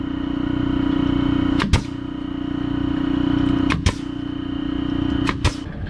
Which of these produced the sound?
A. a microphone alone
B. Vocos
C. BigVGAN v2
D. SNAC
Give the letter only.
A